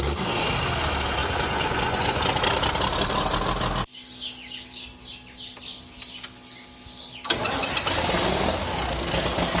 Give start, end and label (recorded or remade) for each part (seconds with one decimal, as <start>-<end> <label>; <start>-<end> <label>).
0.0-1.2 recorded; 1.2-2.2 remade; 2.2-9.6 recorded